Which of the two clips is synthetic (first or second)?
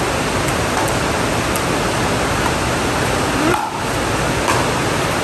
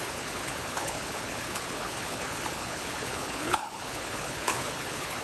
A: second